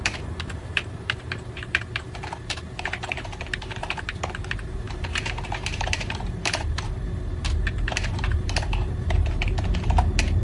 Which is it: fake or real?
fake